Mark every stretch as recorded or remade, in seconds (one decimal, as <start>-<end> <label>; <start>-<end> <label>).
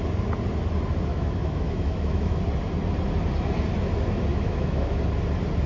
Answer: 0.0-1.1 recorded; 1.1-2.4 remade; 2.4-4.3 recorded; 4.3-5.0 remade; 5.0-5.7 recorded